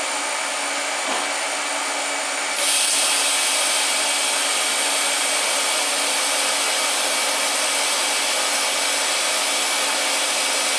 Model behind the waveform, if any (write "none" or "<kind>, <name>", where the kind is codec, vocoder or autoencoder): none